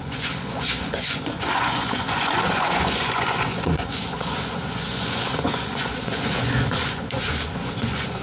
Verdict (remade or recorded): remade